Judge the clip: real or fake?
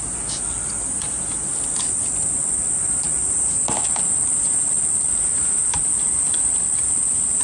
real